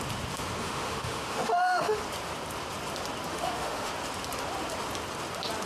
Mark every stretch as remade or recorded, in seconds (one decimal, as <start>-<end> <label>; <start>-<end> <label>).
0.0-0.6 recorded; 0.6-2.0 remade; 2.0-3.3 recorded; 3.3-3.9 remade; 3.9-5.7 recorded